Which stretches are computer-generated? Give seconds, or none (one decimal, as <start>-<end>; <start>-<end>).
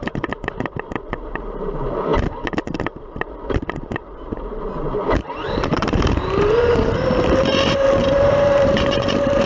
0.0-2.1; 2.8-9.5